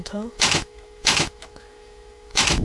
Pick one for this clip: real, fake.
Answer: fake